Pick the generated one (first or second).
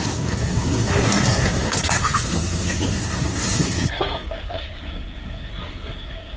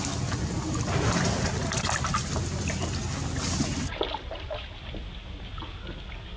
first